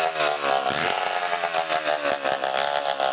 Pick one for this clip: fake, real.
real